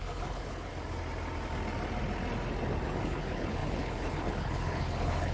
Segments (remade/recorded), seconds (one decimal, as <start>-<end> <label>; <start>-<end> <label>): 0.0-0.7 remade; 0.7-3.0 recorded; 3.0-5.3 remade